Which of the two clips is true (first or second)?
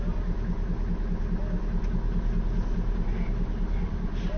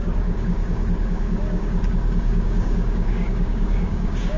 first